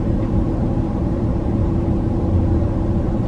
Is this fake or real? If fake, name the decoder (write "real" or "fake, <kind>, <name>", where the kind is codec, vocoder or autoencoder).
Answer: fake, vocoder, BigVGAN v2